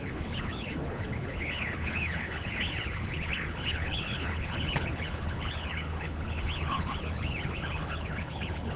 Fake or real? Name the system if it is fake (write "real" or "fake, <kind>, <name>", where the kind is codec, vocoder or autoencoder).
fake, codec, HILCodec